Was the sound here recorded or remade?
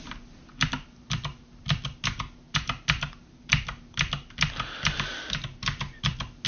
recorded